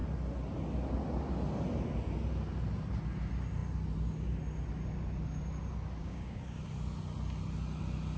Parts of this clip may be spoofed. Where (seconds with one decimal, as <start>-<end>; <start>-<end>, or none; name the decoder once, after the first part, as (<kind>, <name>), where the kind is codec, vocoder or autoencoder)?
6.0-6.6 (codec, DAC)